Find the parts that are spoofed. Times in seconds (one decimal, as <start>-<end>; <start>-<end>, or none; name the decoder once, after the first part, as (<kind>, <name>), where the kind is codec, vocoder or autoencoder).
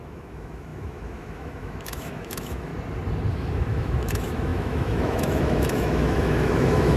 0.0-2.7 (autoencoder, DAC-VAE); 3.3-7.0